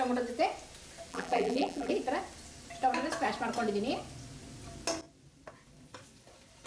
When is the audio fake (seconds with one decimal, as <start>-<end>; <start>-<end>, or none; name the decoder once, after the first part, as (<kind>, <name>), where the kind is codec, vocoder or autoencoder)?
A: 1.1-1.9 (vocoder, BigVGAN v2)

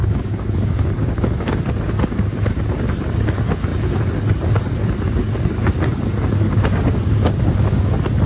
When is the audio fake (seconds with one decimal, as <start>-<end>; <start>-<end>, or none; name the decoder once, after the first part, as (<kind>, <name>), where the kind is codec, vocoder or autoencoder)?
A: 0.0-1.6 (codec, DAC); 6.5-7.9

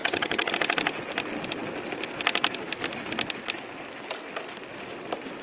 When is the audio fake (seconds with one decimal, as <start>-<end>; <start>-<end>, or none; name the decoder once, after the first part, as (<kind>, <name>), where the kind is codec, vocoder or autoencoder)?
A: 0.0-0.5 (vocoder, HiFi-GAN)

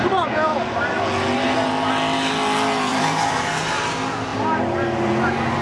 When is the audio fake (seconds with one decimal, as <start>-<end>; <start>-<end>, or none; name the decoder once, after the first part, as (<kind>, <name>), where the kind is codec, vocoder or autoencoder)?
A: 2.9-3.9 (vocoder, BigVGAN v2)

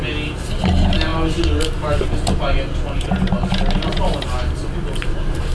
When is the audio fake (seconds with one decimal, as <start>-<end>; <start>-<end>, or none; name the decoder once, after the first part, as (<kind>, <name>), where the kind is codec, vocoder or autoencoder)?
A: none

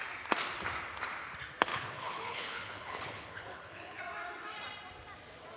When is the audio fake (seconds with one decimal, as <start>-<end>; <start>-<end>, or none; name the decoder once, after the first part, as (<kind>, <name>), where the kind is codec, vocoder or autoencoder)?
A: 1.7-4.0 (codec, HILCodec)

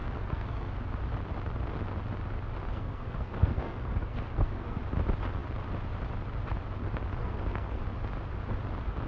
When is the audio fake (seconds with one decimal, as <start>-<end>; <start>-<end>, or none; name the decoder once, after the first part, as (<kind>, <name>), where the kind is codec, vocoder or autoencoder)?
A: 0.0-0.7 (codec, SNAC); 2.7-4.8; 7.2-7.8

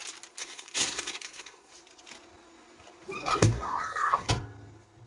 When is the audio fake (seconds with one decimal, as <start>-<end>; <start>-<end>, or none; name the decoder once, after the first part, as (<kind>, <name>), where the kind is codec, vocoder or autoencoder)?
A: 0.4-1.7 (codec, SNAC); 3.2-4.3